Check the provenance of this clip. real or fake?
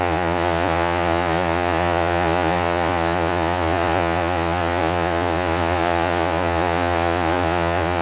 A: fake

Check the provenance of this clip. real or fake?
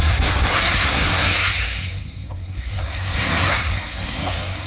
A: fake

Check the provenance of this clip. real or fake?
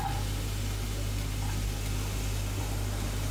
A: real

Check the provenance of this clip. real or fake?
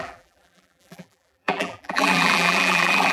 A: fake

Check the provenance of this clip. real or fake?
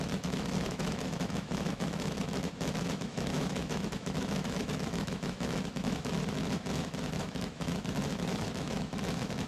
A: fake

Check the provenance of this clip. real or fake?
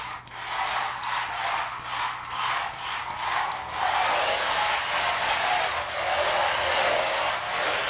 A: real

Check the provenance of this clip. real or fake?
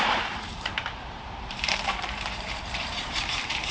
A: fake